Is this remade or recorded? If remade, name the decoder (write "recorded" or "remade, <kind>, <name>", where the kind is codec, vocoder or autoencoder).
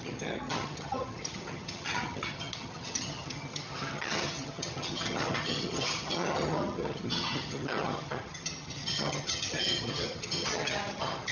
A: remade, vocoder, HiFi-GAN